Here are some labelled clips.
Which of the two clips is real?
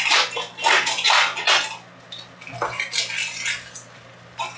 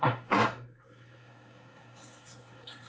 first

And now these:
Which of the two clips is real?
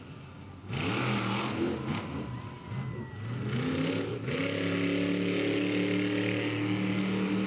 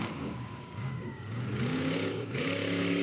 first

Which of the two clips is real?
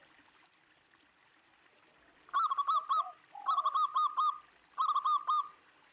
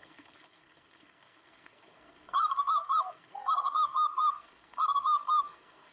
first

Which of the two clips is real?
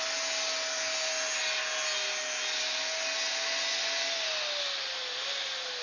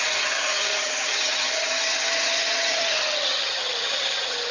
first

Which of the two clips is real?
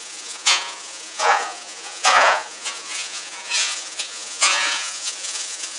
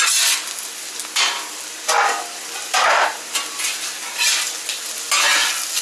second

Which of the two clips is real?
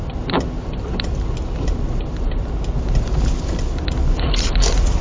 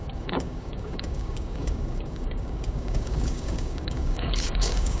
first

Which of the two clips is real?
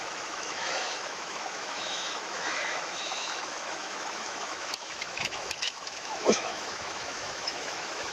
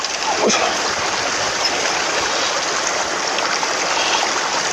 second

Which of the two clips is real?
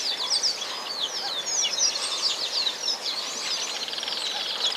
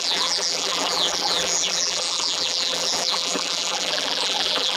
first